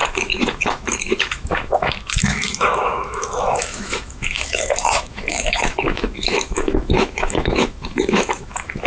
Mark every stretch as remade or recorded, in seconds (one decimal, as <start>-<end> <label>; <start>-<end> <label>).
0.0-8.9 remade